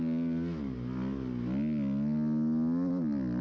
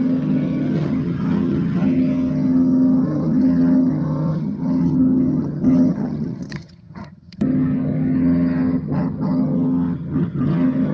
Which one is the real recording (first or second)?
first